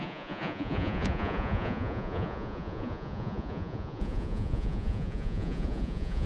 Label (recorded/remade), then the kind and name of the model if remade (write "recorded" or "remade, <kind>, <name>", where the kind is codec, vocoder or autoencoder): remade, vocoder, Vocos